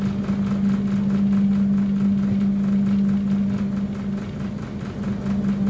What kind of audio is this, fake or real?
real